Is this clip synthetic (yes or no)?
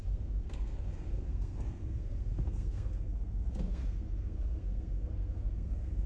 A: yes